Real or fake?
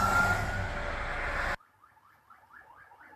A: real